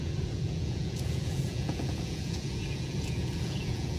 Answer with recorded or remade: remade